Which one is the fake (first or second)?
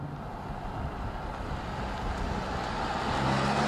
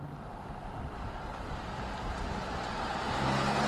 second